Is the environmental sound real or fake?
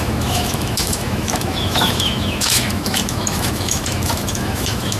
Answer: fake